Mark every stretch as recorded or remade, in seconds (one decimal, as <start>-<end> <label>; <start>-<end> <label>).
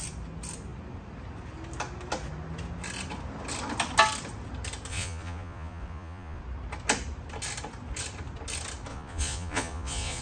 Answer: 0.0-4.9 recorded; 4.9-6.4 remade; 6.4-8.9 recorded; 8.9-10.2 remade